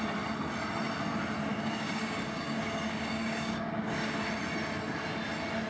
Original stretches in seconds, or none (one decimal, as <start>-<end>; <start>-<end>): 0.0-1.5; 4.2-5.7